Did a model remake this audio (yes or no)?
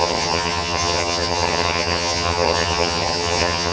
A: yes